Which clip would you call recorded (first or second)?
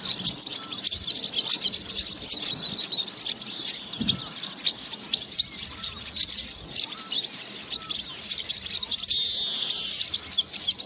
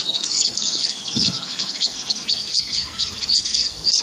first